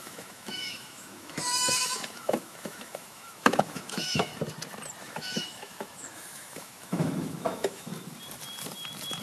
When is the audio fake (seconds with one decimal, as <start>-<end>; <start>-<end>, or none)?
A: 0.0-4.3; 5.0-7.9